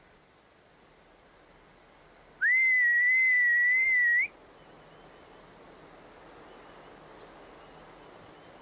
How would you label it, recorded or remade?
recorded